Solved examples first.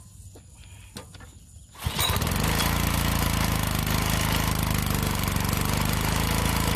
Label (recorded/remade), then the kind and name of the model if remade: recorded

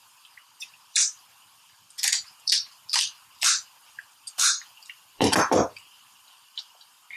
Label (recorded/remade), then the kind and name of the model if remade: remade, vocoder, BigVGAN v2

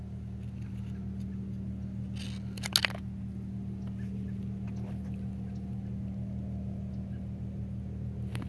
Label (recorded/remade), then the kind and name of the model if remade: recorded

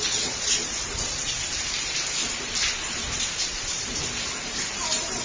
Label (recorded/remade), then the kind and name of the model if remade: remade, vocoder, BigVGAN v2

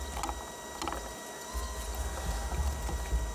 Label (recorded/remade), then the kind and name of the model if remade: recorded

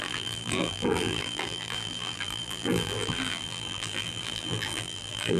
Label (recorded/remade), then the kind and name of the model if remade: remade, vocoder, BigVGAN v2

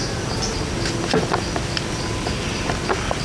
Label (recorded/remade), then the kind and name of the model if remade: recorded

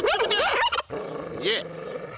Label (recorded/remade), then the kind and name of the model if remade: remade, vocoder, BigVGAN v2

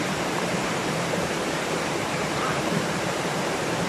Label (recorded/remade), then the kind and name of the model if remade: remade, vocoder, BigVGAN v2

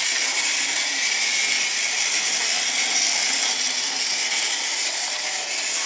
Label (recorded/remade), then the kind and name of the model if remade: recorded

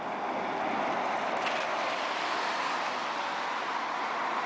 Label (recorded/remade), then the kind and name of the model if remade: remade, vocoder, BigVGAN v2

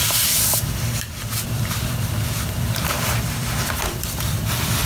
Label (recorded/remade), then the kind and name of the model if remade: remade, vocoder, BigVGAN v2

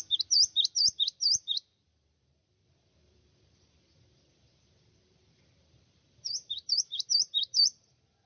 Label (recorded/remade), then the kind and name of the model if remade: remade, vocoder, BigVGAN v2